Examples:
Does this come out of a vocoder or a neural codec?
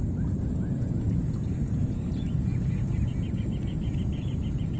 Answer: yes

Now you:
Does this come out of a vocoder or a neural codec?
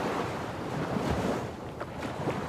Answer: yes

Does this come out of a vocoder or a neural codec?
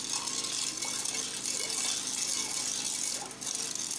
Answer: no